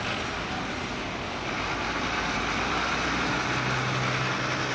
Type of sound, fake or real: real